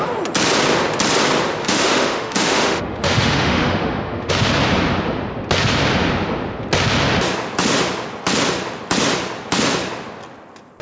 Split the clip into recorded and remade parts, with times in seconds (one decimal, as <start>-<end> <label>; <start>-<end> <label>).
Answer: 0.0-1.6 recorded; 1.6-4.3 remade; 4.3-10.8 recorded